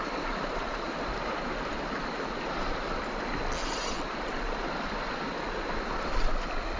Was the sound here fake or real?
real